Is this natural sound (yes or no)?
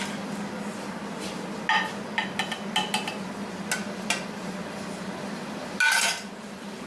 yes